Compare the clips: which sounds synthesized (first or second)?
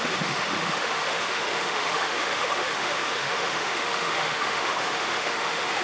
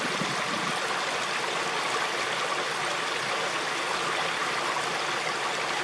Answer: first